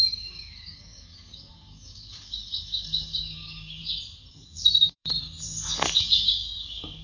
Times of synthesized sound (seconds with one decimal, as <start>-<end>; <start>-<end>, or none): 0.0-3.8; 4.3-7.0